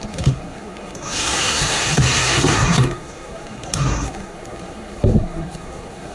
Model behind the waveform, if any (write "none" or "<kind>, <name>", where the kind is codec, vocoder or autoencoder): codec, SNAC